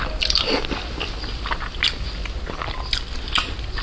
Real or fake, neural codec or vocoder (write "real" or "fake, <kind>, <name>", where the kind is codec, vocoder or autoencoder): real